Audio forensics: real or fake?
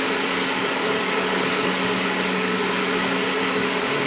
fake